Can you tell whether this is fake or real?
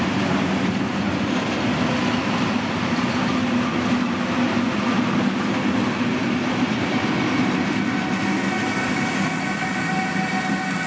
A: real